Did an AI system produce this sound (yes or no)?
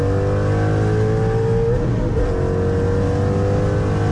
no